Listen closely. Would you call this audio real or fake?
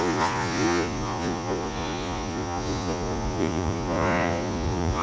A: fake